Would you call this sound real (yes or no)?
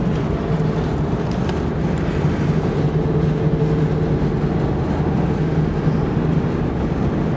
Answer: yes